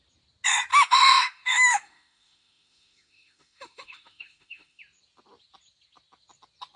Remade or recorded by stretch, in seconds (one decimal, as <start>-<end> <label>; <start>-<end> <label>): 0.0-0.7 recorded; 0.7-4.8 remade; 4.8-6.8 recorded